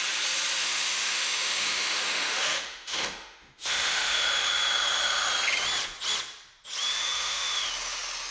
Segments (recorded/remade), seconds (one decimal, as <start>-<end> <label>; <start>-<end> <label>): 0.0-0.6 recorded; 0.6-5.3 remade; 5.3-7.0 recorded; 7.0-7.7 remade; 7.7-8.3 recorded

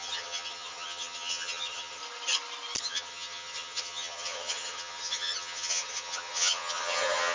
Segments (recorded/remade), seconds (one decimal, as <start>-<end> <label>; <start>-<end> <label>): 0.0-2.0 remade; 2.0-2.8 recorded; 2.8-7.3 remade

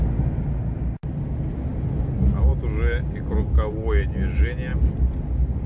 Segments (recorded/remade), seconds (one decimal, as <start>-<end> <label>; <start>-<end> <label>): 0.0-5.7 recorded

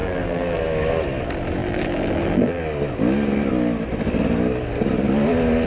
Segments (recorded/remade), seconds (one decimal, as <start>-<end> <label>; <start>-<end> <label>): 0.0-0.6 remade; 0.6-1.6 recorded; 1.6-2.6 remade; 2.6-5.7 recorded